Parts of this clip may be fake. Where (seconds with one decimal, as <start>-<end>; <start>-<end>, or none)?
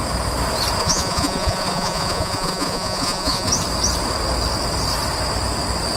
0.8-3.5